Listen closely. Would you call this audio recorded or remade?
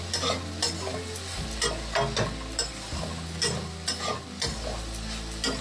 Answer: recorded